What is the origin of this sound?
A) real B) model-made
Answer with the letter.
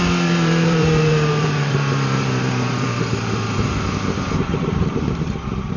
B